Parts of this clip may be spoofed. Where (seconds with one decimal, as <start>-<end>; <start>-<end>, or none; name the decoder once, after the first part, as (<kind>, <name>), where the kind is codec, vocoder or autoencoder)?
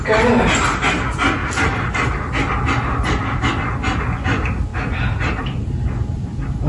none